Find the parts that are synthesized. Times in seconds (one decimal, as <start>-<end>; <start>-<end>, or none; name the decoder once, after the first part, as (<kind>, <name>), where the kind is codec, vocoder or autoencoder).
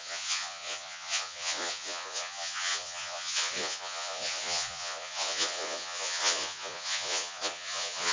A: 0.0-8.1 (vocoder, Vocos)